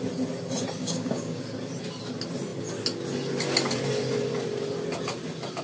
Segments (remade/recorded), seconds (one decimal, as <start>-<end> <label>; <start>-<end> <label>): 0.0-0.8 recorded; 0.8-1.4 remade; 1.4-5.6 recorded